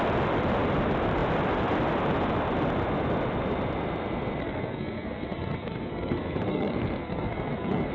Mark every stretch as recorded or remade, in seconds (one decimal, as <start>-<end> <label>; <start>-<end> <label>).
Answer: 0.0-4.4 recorded; 4.4-7.9 remade